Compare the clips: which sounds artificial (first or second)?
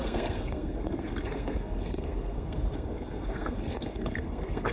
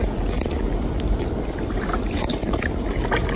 first